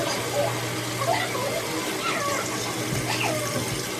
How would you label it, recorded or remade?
recorded